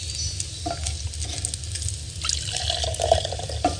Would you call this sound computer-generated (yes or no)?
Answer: no